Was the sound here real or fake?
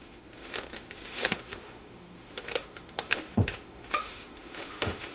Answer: fake